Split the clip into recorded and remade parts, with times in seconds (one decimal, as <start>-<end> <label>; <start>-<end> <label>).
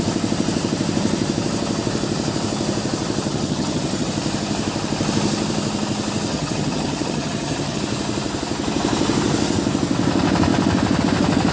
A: 0.0-3.3 recorded; 3.3-4.1 remade; 4.1-6.3 recorded; 6.3-7.8 remade; 7.8-11.5 recorded